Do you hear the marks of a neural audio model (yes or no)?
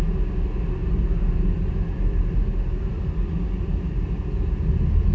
no